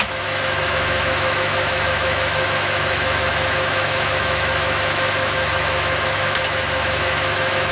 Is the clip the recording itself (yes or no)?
no